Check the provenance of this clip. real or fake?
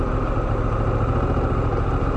real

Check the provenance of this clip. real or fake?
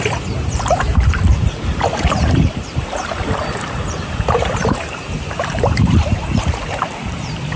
fake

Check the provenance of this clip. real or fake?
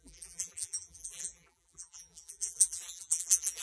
fake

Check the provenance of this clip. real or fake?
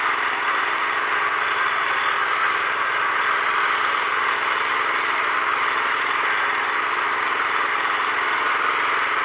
fake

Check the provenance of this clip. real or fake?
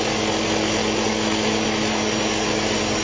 real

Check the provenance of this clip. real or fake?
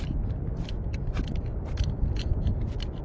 fake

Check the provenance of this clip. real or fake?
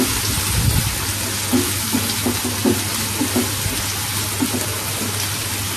real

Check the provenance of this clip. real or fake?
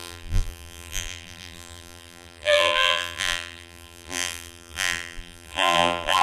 fake